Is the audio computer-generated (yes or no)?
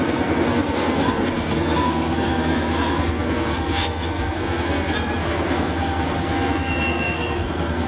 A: yes